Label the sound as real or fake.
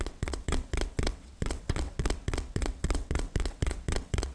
fake